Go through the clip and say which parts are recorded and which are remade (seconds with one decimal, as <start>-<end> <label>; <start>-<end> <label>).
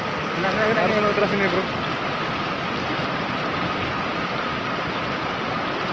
0.0-5.9 recorded